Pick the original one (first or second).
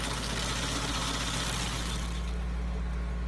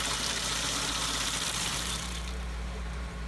first